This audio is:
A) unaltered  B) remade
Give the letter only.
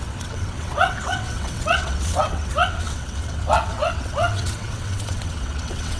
B